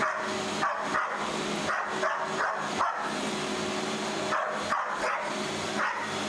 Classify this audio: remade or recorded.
recorded